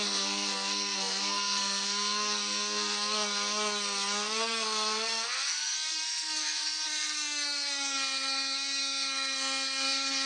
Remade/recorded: remade